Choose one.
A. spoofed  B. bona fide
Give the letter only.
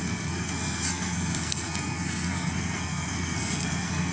A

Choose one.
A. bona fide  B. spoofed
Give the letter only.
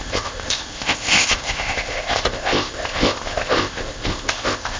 B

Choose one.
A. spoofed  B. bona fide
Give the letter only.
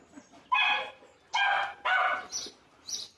B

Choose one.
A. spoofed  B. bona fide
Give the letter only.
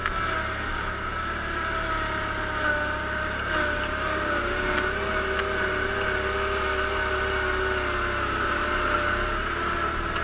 B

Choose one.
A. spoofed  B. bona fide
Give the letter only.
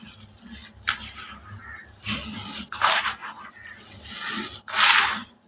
B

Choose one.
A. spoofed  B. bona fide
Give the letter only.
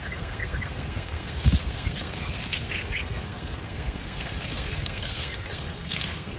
A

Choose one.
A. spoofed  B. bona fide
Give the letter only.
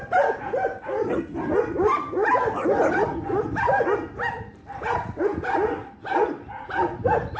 B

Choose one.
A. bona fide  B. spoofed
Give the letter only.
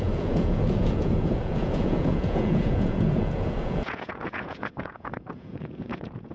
B